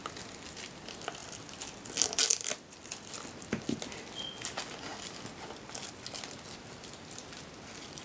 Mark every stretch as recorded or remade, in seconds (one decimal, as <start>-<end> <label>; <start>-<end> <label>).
0.0-1.2 recorded; 1.2-3.1 remade; 3.1-8.0 recorded